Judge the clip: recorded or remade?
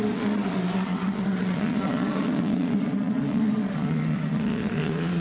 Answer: remade